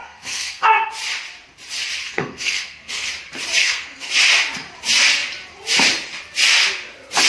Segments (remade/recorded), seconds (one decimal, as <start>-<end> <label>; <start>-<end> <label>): 0.0-0.9 remade; 0.9-2.0 recorded; 2.0-3.1 remade; 3.1-3.6 recorded; 3.6-4.1 remade; 4.1-7.3 recorded